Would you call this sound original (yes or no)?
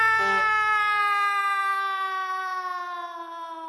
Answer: yes